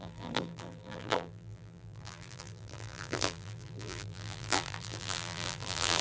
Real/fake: fake